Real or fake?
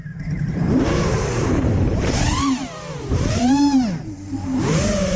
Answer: fake